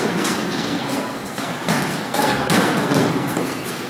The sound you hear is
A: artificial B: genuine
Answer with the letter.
A